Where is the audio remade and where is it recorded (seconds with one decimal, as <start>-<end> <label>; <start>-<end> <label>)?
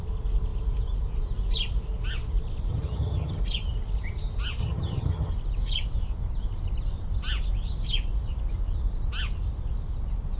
0.0-2.7 recorded; 2.7-3.4 remade; 3.4-4.6 recorded; 4.6-5.3 remade; 5.3-10.4 recorded